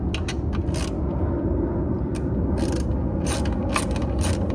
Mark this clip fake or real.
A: real